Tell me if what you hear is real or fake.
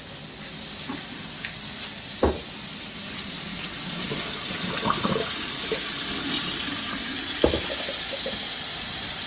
real